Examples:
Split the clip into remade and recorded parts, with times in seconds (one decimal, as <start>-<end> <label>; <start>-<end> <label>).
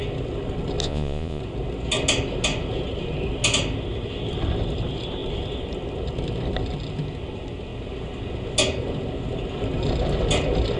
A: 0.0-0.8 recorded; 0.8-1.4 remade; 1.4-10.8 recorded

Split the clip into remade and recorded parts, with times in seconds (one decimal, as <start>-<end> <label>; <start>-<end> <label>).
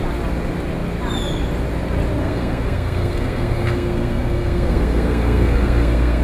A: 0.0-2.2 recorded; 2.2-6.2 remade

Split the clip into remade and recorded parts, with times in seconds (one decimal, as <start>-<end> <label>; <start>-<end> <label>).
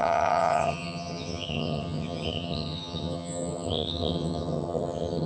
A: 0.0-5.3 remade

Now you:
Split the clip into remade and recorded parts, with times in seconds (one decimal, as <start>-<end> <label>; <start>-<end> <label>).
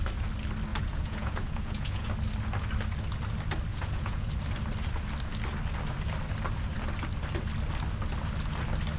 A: 0.0-0.7 recorded; 0.7-2.1 remade; 2.1-3.7 recorded; 3.7-4.3 remade; 4.3-9.0 recorded